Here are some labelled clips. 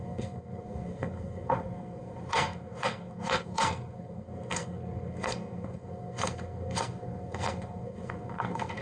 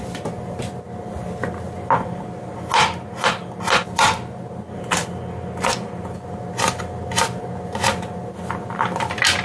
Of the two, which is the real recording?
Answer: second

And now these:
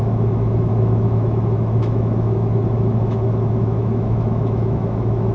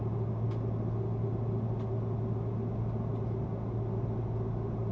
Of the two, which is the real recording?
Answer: second